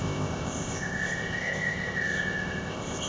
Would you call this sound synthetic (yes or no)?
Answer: yes